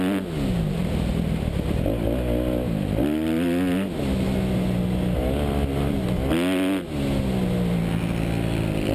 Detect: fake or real real